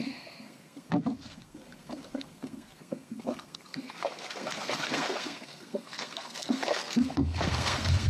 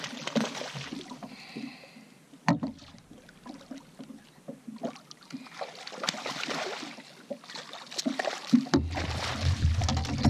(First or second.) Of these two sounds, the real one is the second